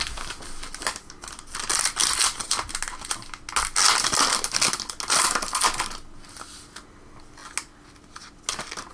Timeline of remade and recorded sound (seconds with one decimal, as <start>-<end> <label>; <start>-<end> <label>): 0.0-8.9 recorded